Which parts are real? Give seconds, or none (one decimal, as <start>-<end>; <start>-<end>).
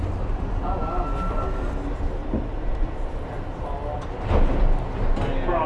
0.0-5.7